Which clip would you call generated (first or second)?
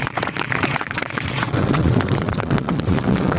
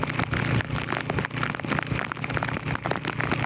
first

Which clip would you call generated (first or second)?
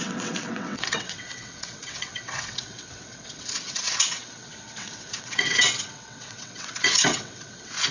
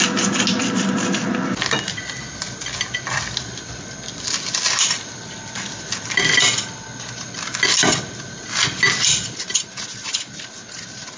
first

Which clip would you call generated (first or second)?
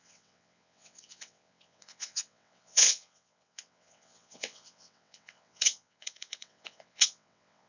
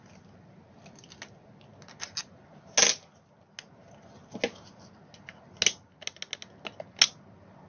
first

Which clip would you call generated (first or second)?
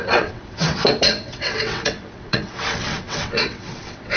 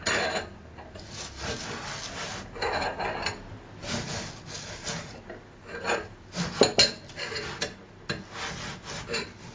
first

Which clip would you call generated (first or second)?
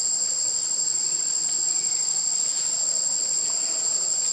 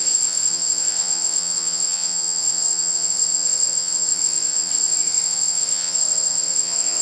second